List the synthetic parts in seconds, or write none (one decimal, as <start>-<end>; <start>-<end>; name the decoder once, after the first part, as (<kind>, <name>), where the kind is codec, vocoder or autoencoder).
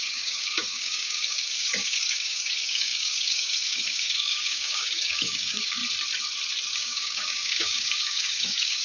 0.0-5.8 (codec, DAC); 6.7-8.8